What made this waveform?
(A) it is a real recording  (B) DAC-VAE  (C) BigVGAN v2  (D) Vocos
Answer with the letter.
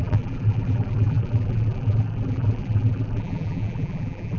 C